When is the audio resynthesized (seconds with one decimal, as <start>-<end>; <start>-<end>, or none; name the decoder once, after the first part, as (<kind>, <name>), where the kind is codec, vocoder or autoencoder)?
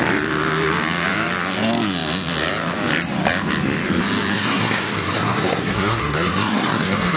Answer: 4.3-7.2 (codec, SNAC)